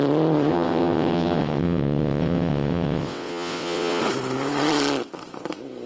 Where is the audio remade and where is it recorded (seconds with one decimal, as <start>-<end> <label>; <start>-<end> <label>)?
0.0-0.5 recorded; 0.5-4.0 remade; 4.0-5.9 recorded